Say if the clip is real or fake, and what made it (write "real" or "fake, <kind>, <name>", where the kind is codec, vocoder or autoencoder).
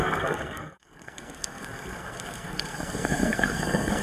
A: fake, codec, SNAC